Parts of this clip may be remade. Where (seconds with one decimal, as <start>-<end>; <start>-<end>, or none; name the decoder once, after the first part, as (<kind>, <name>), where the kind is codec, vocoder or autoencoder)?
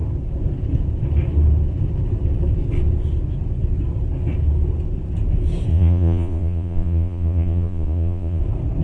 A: 5.7-8.4 (vocoder, Vocos)